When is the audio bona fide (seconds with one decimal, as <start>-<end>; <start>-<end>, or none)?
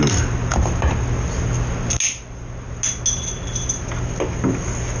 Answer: 0.0-5.0